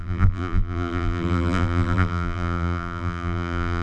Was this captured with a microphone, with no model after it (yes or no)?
no